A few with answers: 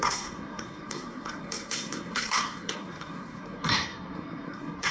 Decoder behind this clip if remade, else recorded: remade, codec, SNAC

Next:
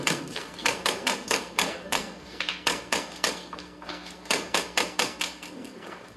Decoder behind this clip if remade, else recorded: remade, codec, SNAC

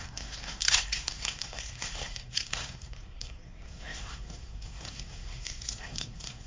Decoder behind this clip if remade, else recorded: remade, codec, SNAC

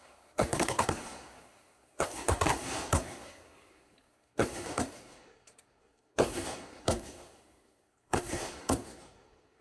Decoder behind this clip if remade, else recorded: remade, codec, SNAC